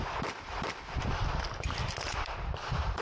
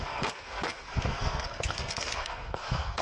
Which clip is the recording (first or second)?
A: first